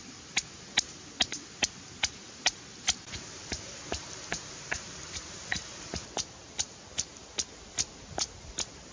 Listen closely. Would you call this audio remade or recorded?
recorded